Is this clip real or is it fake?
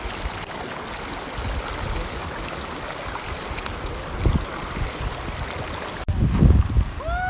real